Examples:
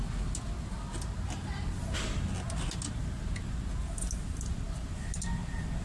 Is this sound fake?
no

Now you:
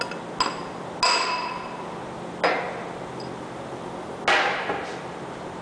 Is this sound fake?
no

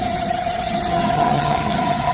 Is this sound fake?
yes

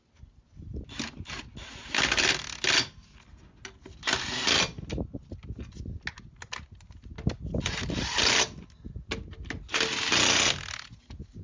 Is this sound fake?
no